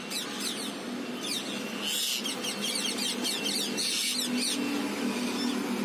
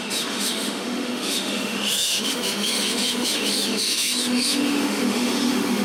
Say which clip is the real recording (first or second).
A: first